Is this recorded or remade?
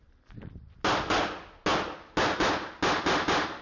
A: recorded